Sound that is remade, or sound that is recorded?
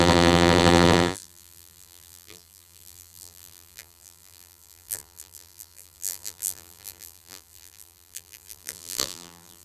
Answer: remade